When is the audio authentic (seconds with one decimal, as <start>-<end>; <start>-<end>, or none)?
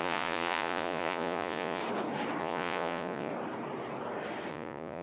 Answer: 1.8-2.4; 3.3-4.5